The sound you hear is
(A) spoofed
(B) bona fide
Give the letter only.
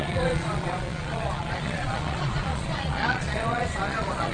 A